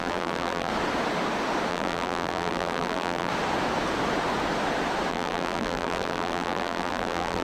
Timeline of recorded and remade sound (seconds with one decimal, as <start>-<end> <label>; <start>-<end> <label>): 0.0-0.7 remade; 0.7-1.7 recorded; 1.7-3.3 remade; 3.3-5.1 recorded; 5.1-7.4 remade